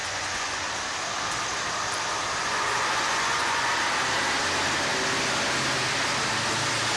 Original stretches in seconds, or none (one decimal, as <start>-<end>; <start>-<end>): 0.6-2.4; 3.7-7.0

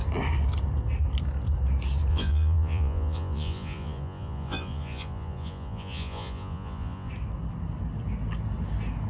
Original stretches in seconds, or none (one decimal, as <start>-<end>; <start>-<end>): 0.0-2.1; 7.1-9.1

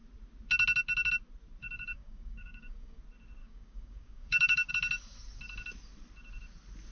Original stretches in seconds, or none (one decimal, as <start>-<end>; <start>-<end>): 0.0-1.6; 3.0-3.4; 4.7-6.9

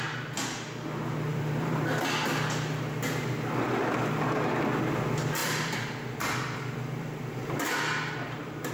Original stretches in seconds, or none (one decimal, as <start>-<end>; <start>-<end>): 0.0-1.3; 1.9-5.4

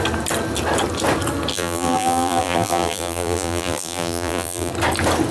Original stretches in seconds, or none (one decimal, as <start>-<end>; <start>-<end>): 0.0-1.5; 4.7-5.3

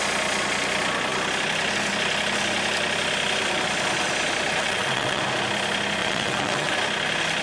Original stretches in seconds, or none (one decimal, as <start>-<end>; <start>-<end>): 0.0-4.6; 5.2-6.0; 6.7-7.4

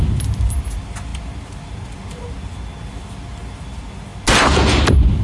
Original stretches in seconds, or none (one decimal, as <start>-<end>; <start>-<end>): 0.0-5.2